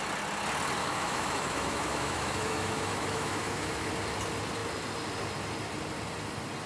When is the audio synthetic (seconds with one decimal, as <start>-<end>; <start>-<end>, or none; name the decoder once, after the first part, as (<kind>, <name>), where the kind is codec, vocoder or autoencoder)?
0.8-3.9 (autoencoder, DAC-VAE)